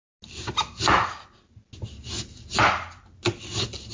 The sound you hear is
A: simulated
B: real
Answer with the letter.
B